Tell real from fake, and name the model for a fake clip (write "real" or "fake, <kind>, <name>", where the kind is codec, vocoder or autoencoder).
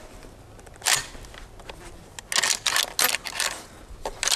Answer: real